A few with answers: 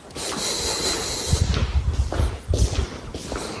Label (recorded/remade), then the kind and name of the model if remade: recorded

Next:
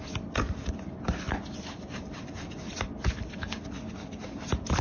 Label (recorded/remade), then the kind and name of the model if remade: recorded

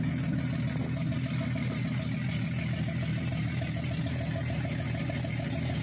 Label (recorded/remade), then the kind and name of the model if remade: recorded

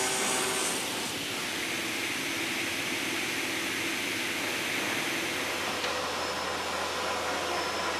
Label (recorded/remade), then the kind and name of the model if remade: recorded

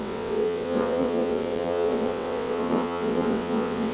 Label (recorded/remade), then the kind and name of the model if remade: remade, vocoder, WaveNeXt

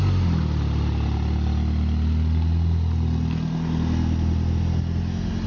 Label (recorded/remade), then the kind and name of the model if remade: recorded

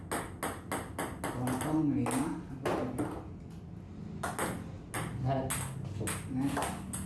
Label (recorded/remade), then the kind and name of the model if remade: recorded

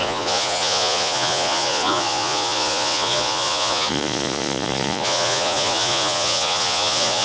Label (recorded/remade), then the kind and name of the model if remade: remade, vocoder, Vocos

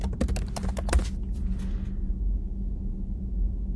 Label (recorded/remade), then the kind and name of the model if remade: recorded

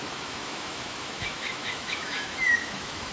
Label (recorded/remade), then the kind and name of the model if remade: remade, autoencoder, DAC-VAE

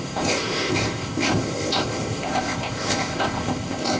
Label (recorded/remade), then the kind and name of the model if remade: remade, codec, ZipCodec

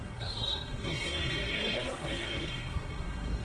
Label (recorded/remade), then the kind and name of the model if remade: remade, codec, SNAC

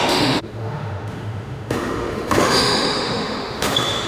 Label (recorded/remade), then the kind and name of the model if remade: remade, autoencoder, DAC-VAE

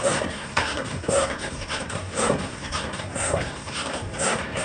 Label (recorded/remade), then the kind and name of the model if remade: remade, codec, SNAC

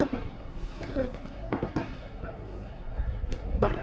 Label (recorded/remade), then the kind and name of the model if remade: remade, codec, SNAC